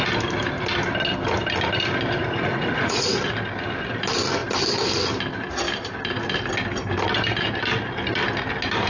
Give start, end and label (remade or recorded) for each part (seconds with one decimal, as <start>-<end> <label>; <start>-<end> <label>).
0.0-2.2 recorded; 2.2-3.2 remade; 3.2-8.9 recorded